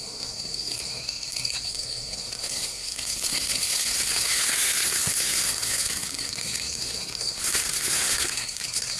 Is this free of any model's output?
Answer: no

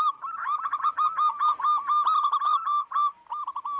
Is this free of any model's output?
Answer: yes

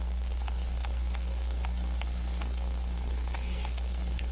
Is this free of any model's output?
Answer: no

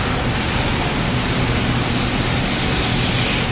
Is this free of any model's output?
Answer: yes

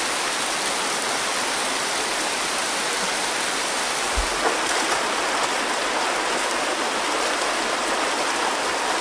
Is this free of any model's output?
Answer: yes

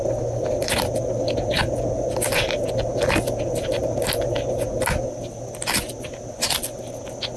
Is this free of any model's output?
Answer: yes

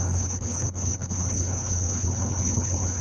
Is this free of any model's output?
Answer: no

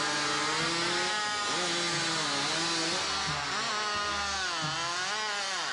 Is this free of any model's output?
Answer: yes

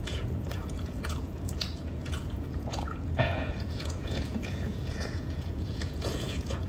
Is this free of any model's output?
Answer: no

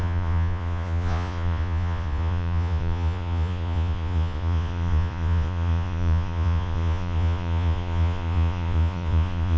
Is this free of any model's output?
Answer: no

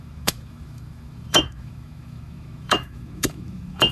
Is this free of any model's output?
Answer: no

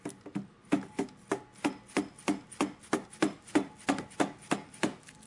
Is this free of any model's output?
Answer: yes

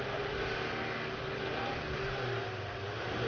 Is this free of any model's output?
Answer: yes